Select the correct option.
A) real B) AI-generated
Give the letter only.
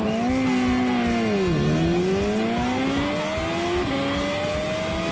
A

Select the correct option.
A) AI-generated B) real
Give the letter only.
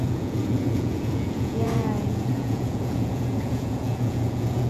A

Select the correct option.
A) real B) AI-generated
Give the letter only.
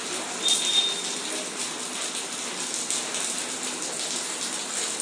A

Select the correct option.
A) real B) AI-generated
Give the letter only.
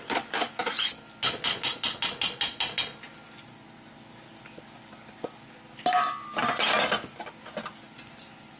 A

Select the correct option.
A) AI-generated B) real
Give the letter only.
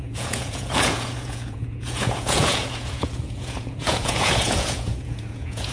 A